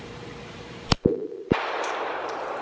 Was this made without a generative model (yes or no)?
no